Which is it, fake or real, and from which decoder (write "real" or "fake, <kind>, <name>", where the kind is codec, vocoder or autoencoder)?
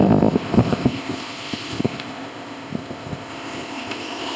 fake, codec, ZipCodec